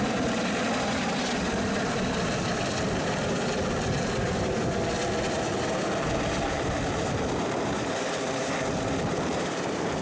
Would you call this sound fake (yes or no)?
yes